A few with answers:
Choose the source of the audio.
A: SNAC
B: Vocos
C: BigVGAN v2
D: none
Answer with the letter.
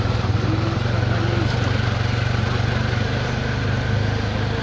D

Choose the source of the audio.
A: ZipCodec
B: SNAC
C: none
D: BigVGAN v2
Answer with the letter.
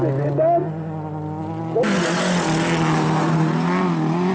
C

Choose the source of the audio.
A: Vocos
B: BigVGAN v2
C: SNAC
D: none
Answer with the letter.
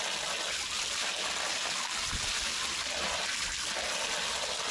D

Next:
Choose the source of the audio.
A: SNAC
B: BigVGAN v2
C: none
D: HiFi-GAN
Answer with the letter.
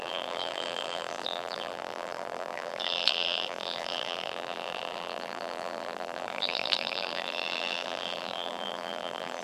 B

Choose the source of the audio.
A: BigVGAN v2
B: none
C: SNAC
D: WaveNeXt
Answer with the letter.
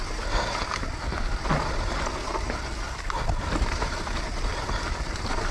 B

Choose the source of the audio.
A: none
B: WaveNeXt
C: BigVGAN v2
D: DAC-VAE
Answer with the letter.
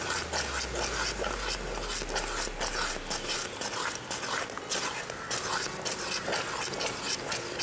A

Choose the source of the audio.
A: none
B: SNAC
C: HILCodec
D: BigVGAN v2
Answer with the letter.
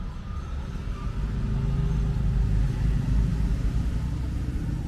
A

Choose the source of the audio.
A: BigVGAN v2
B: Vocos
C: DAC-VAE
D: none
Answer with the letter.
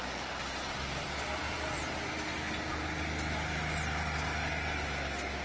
D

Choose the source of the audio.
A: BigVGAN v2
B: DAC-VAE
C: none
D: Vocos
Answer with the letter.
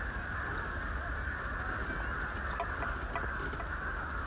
C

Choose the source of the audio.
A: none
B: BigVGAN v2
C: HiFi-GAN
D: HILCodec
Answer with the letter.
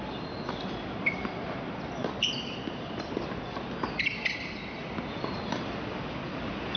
A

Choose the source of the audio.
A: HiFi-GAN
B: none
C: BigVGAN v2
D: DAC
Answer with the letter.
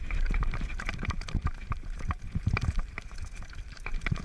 C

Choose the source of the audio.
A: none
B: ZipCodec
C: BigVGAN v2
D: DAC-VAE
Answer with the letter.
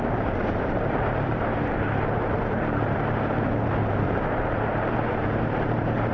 C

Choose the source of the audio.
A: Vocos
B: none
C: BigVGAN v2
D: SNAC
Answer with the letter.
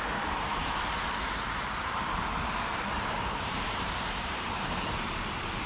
C